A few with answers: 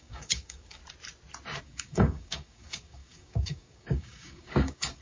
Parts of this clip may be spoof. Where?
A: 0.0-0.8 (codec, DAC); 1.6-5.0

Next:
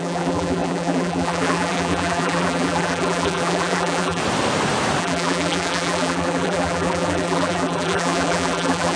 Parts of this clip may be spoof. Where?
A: 0.0-4.2 (vocoder, BigVGAN v2); 5.0-9.0

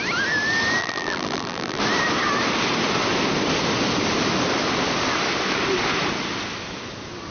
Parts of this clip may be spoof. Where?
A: 0.8-1.8 (vocoder, BigVGAN v2)

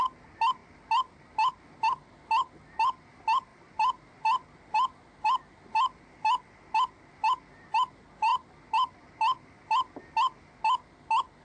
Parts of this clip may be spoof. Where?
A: 3.5-4.1 (vocoder, BigVGAN v2)

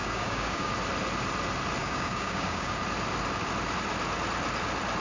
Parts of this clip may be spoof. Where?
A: 0.0-0.7 (codec, DAC); 1.8-2.8

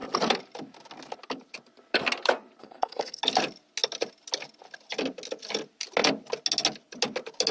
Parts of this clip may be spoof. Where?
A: 2.6-3.2 (codec, SNAC)